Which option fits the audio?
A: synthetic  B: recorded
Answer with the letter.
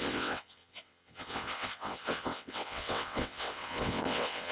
A